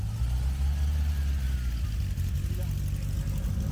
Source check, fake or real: real